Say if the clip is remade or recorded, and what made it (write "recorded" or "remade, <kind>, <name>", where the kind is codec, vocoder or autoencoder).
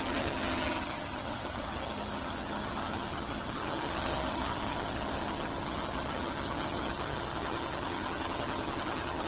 remade, vocoder, HiFi-GAN